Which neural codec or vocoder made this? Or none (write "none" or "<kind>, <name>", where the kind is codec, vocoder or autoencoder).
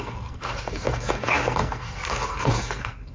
codec, SNAC